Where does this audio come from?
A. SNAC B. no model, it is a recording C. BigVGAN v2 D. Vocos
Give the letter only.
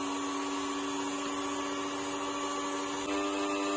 B